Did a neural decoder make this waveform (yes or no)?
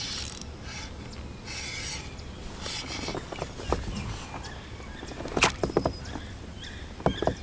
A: no